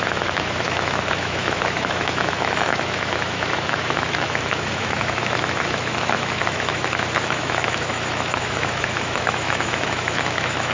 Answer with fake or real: fake